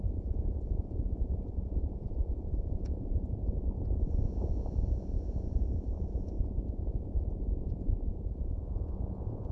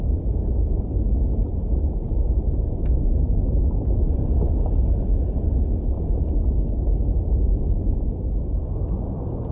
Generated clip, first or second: first